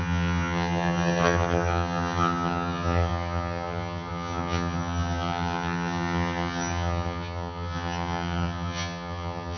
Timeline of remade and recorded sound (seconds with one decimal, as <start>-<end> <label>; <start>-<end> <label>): 0.0-9.6 remade